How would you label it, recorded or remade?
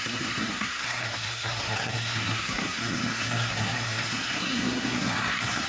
remade